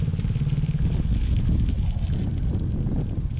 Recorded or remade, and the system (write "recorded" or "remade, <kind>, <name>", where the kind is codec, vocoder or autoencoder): recorded